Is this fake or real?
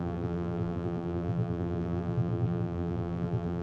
fake